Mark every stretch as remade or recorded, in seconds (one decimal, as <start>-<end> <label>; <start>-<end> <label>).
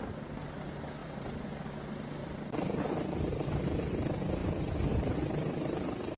0.0-1.0 recorded; 1.0-1.6 remade; 1.6-2.2 recorded; 2.2-3.3 remade; 3.3-4.4 recorded; 4.4-5.1 remade; 5.1-6.2 recorded